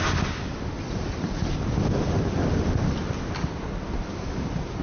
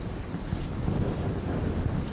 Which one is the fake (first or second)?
first